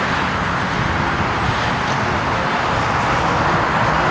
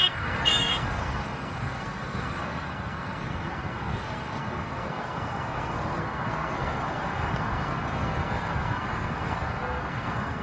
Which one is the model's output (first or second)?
second